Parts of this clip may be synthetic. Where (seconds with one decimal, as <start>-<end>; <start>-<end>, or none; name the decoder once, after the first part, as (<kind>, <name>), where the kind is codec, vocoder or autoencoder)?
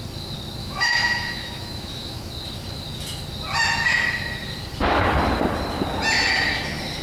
0.6-2.3 (autoencoder, DAC-VAE)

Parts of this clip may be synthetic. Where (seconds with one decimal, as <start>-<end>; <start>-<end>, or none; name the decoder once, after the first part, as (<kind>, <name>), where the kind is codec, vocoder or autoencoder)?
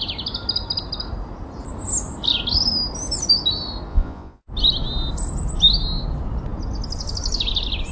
3.9-4.4 (vocoder, Vocos)